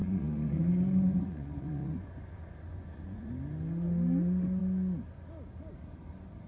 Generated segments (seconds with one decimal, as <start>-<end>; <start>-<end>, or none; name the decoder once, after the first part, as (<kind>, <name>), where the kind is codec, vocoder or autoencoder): 0.0-3.3 (vocoder, Vocos)